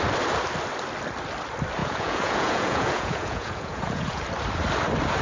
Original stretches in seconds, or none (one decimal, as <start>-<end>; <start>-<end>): 0.0-1.8; 4.2-5.2